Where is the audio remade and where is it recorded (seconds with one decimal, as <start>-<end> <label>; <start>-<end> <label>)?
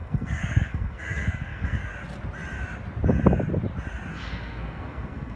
0.0-1.9 remade; 1.9-4.1 recorded; 4.1-5.4 remade